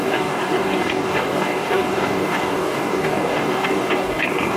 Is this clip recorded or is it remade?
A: remade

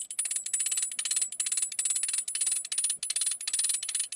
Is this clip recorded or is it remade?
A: recorded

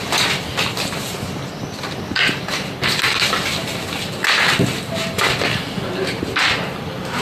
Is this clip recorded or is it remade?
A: recorded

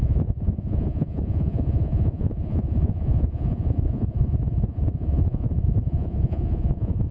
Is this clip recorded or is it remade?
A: remade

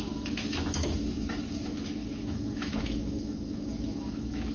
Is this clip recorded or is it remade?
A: remade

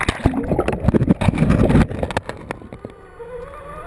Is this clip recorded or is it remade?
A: recorded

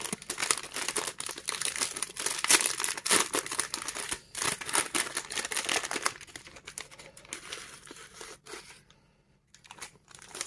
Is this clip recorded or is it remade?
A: recorded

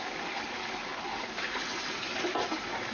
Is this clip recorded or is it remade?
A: recorded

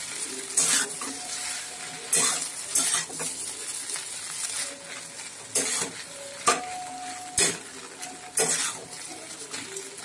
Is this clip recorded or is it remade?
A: recorded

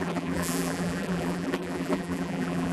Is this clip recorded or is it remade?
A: remade